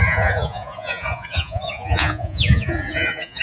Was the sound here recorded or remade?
remade